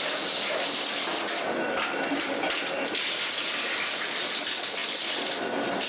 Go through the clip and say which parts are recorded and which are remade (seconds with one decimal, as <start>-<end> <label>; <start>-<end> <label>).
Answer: 0.0-5.9 recorded